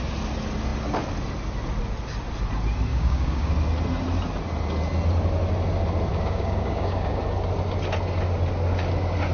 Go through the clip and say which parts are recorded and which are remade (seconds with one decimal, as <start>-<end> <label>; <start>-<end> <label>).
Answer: 0.0-2.9 recorded; 2.9-3.5 remade; 3.5-6.1 recorded; 6.1-7.2 remade; 7.2-9.3 recorded